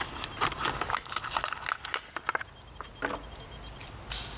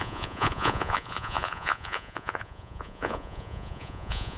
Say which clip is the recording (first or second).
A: first